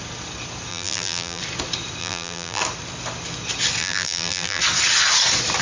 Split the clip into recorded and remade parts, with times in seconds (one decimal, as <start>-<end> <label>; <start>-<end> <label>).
0.0-0.7 recorded; 0.7-1.4 remade; 1.4-2.0 recorded; 2.0-2.6 remade; 2.6-3.8 recorded; 3.8-4.6 remade; 4.6-5.6 recorded